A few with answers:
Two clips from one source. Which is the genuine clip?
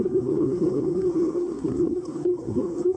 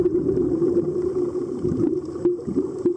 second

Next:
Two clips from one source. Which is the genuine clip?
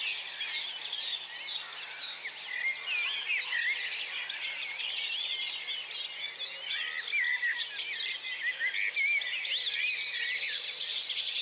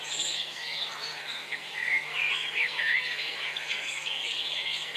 first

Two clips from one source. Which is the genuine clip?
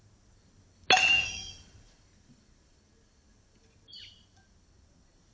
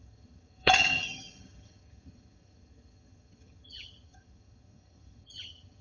first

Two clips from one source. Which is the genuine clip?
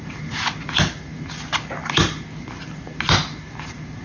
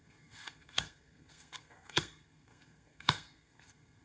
first